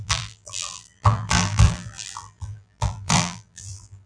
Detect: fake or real fake